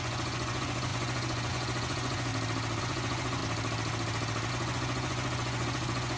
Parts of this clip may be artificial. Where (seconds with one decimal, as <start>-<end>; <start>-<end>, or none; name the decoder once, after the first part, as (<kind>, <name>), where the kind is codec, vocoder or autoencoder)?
0.0-2.3 (vocoder, Vocos); 2.8-3.4; 4.5-6.2